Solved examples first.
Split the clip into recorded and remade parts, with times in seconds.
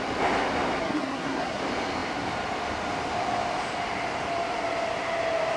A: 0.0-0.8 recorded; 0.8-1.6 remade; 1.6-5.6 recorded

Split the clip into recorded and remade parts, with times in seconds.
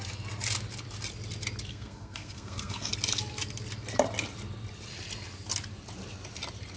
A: 0.0-1.7 recorded; 1.7-2.9 remade; 2.9-6.8 recorded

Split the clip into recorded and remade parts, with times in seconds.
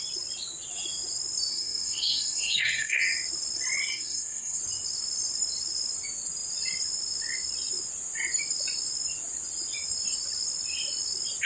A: 0.0-1.5 recorded; 1.5-3.0 remade; 3.0-3.9 recorded; 3.9-4.6 remade; 4.6-11.5 recorded